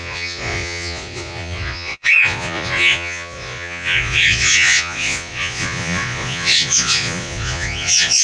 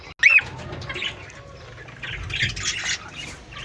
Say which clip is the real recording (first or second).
second